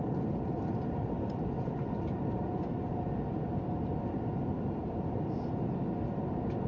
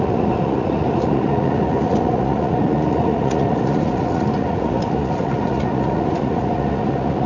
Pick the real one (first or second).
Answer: first